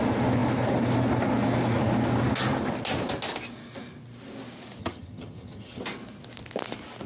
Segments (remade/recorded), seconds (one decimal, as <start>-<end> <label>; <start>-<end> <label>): 0.0-4.8 recorded; 4.8-5.8 remade; 5.8-7.1 recorded